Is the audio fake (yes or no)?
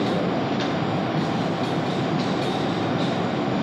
no